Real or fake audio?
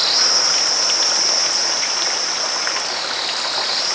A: real